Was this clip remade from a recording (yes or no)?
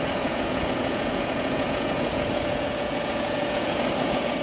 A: yes